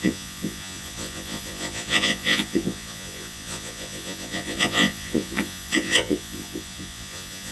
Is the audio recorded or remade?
remade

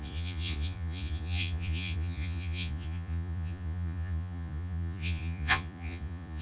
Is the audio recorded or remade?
remade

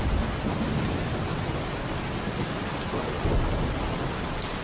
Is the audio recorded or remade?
recorded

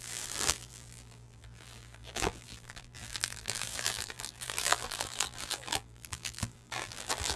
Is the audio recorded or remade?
remade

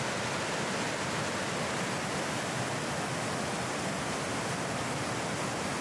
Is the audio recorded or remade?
recorded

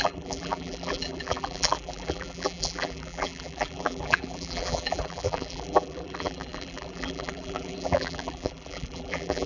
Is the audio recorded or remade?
remade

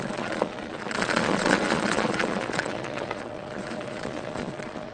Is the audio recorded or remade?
remade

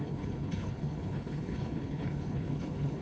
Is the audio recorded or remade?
remade